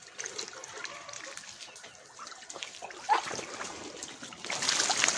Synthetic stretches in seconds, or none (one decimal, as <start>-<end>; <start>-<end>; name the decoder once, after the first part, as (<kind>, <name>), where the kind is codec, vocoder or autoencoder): none